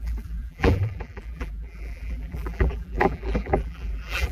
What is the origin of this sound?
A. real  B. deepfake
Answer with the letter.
B